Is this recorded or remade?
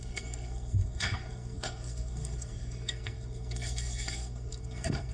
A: remade